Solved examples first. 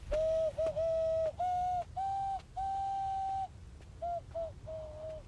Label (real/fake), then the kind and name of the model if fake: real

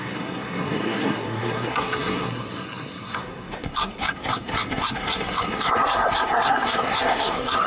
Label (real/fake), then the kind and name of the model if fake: fake, codec, SNAC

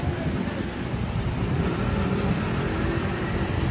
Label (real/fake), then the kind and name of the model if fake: fake, vocoder, BigVGAN v2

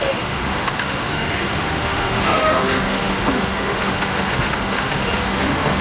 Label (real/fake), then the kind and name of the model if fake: fake, autoencoder, DAC-VAE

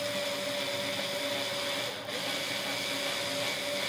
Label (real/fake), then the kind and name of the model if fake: real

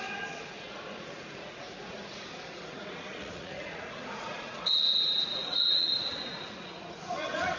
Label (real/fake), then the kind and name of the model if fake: fake, vocoder, Vocos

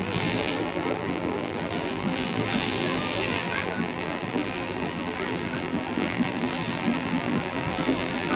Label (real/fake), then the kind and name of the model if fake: fake, vocoder, BigVGAN v2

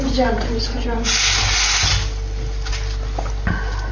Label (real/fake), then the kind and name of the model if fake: real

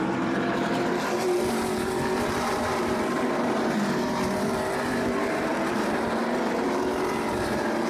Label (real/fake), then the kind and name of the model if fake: fake, vocoder, BigVGAN v2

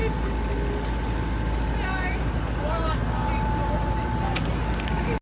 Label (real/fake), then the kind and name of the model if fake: real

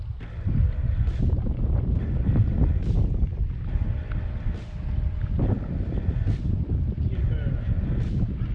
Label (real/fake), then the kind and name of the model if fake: real